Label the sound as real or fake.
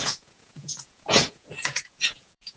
fake